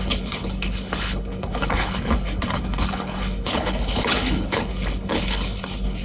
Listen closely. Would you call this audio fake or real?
fake